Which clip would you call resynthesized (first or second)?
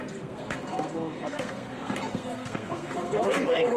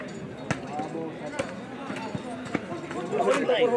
first